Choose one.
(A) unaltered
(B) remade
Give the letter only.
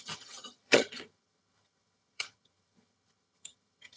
B